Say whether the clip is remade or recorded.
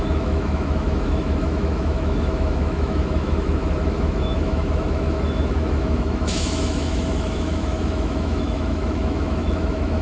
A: remade